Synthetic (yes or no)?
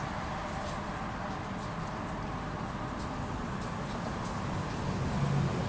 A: no